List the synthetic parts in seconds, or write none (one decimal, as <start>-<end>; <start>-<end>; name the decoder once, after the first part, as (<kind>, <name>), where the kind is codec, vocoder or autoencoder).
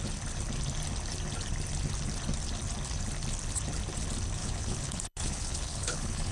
4.4-6.3 (codec, HILCodec)